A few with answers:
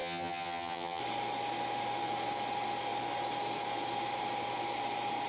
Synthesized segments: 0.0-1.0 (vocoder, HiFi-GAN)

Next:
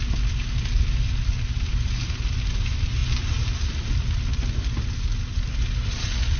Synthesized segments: none

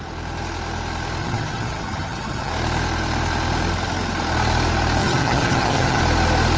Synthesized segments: 1.2-2.5 (vocoder, HiFi-GAN); 5.0-6.0

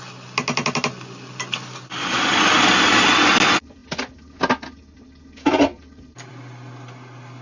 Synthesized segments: none

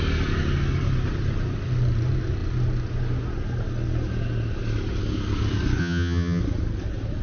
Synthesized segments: 5.8-6.4 (vocoder, HiFi-GAN)

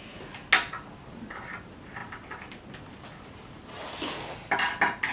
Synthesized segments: none

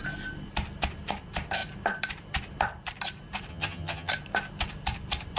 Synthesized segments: 3.5-4.1 (vocoder, HiFi-GAN)